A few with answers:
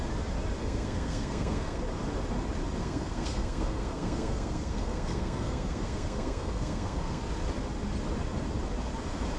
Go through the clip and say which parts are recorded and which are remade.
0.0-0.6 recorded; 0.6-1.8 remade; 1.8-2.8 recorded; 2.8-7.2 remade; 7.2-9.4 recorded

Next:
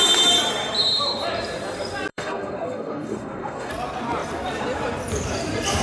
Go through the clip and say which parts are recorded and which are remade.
0.0-2.1 recorded; 2.1-3.7 remade; 3.7-5.8 recorded